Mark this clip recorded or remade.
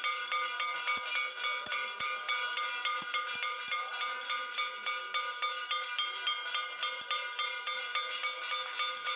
recorded